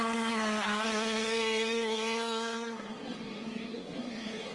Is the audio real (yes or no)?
no